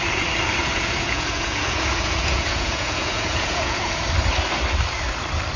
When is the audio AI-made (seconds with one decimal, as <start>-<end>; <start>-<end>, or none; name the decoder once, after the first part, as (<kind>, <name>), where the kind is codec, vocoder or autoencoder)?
0.6-4.0 (vocoder, Vocos)